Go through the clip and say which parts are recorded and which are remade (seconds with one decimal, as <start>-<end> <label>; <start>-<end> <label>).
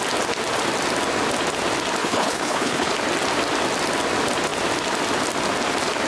0.0-2.0 recorded; 2.0-2.9 remade; 2.9-6.1 recorded